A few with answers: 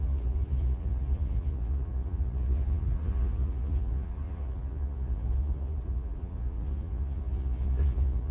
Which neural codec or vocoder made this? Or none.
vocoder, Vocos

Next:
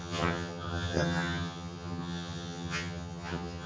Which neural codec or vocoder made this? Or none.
vocoder, HiFi-GAN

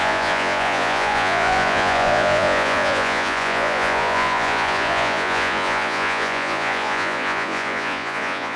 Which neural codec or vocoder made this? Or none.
vocoder, Vocos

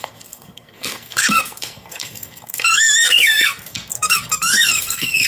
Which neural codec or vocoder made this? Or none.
codec, SNAC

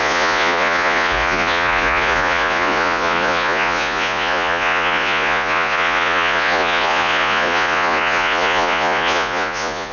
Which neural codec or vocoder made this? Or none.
vocoder, Vocos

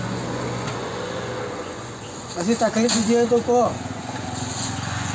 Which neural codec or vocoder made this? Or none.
vocoder, Vocos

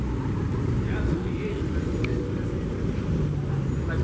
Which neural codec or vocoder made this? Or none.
none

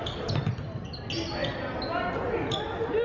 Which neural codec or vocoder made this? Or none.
none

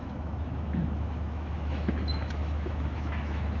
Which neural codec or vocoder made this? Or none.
autoencoder, DAC-VAE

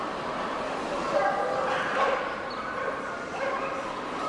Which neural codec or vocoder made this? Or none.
none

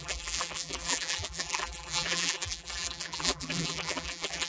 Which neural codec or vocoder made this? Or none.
vocoder, BigVGAN v2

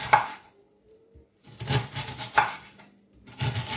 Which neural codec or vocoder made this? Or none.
none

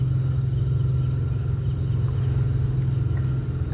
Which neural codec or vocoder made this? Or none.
none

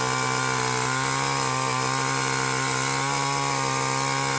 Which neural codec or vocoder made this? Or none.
none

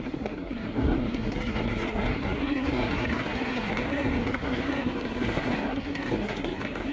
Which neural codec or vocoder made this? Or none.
codec, SNAC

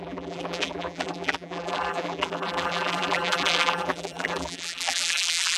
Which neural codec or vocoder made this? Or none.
vocoder, BigVGAN v2